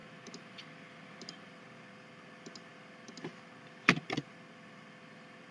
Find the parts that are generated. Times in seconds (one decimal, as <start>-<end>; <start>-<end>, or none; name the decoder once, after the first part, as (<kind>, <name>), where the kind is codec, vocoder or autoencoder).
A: 0.0-0.6 (vocoder, BigVGAN v2)